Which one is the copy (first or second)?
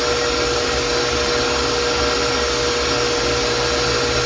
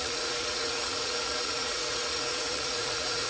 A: second